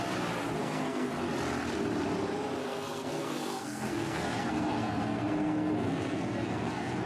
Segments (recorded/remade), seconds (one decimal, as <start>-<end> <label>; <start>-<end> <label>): 0.0-0.6 recorded; 0.6-1.1 remade; 1.1-2.6 recorded; 2.6-7.1 remade